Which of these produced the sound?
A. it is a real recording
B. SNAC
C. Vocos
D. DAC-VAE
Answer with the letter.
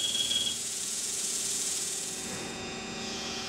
C